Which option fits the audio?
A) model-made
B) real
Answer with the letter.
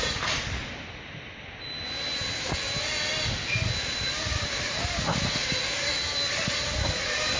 B